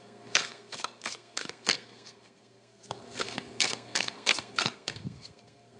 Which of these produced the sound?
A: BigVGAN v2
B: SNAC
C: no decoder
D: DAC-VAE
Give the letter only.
B